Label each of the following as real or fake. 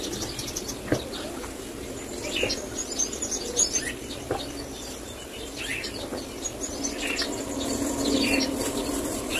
real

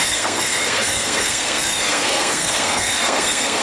fake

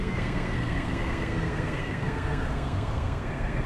fake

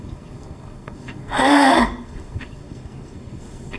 fake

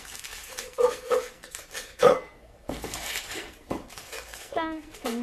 fake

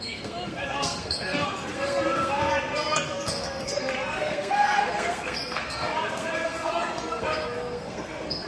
fake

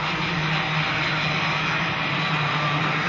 real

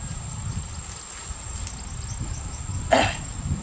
real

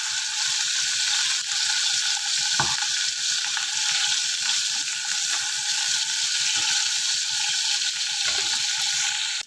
real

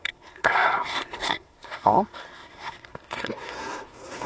fake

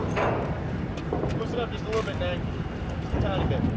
real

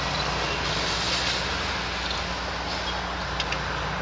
real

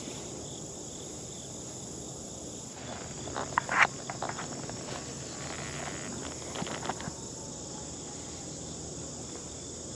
real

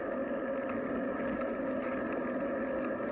real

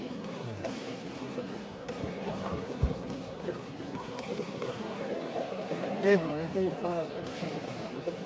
fake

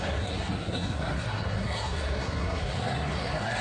fake